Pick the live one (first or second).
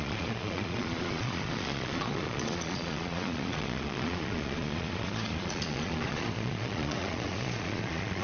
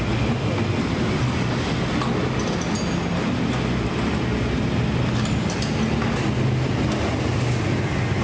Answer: second